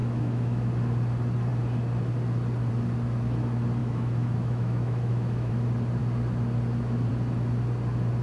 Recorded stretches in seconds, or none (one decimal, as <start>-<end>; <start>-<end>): 0.7-3.8; 5.5-8.2